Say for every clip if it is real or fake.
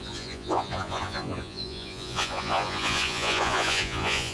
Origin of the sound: fake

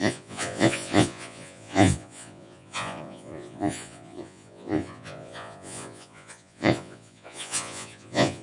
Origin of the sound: fake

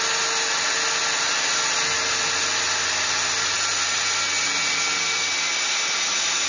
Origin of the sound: real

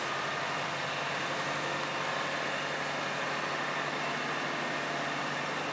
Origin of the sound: real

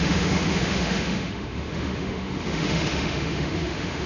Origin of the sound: fake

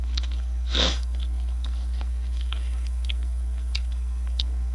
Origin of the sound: fake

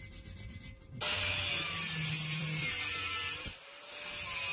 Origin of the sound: real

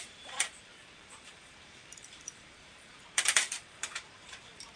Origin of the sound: fake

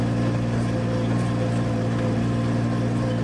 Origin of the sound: real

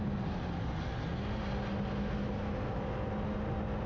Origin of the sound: real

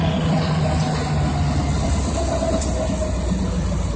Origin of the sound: real